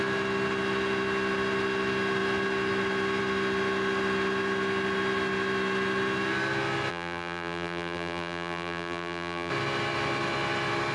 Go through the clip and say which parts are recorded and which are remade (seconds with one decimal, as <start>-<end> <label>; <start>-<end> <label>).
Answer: 0.0-6.9 recorded; 6.9-9.5 remade; 9.5-10.9 recorded